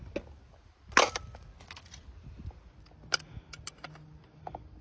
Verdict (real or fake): real